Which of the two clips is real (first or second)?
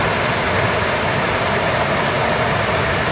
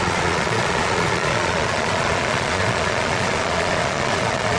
first